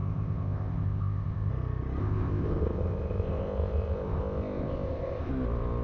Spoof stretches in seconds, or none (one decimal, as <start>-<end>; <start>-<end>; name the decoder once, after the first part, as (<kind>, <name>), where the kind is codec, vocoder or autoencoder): 0.0-1.5 (codec, ZipCodec); 2.0-5.3